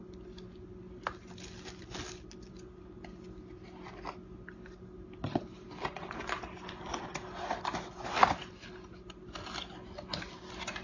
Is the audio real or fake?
real